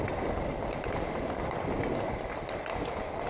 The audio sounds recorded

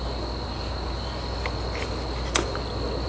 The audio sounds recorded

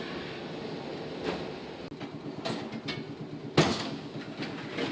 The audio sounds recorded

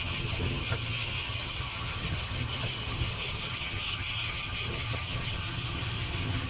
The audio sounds remade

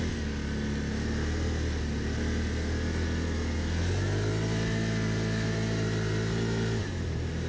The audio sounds recorded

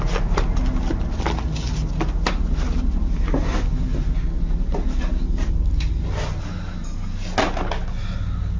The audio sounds recorded